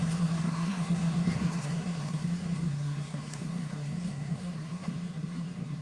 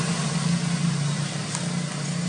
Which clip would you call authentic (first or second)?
second